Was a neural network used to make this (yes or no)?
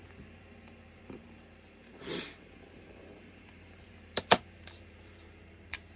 yes